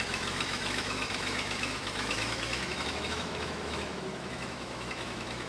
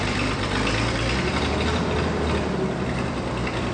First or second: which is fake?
first